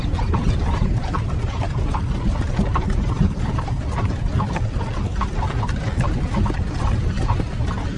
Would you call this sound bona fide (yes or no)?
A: yes